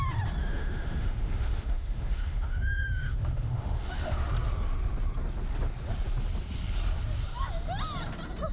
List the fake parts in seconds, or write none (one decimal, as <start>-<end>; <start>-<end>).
0.4-4.3